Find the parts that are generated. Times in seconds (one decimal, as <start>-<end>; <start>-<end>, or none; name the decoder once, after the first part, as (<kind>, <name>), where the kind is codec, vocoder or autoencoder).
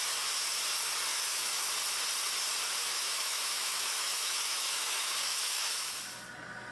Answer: 1.1-1.7 (autoencoder, DAC-VAE); 2.8-6.0